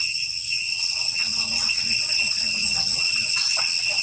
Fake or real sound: fake